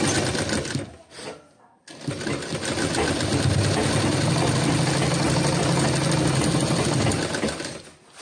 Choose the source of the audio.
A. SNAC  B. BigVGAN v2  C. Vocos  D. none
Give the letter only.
D